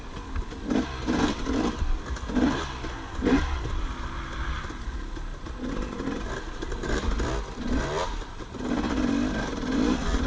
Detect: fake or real real